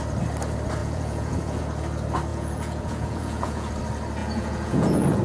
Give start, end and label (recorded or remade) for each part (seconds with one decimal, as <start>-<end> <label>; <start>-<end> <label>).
0.0-0.8 recorded; 0.8-1.6 remade; 1.6-2.3 recorded; 2.3-3.7 remade; 3.7-4.2 recorded; 4.2-5.2 remade

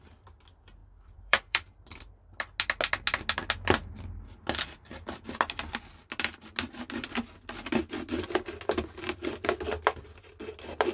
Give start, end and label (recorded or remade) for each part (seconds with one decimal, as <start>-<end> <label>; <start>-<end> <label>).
0.0-0.8 recorded; 0.8-2.1 remade; 2.1-10.9 recorded

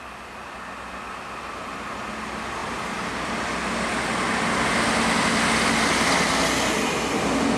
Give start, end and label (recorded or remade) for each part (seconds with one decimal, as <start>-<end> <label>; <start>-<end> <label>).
0.0-7.6 recorded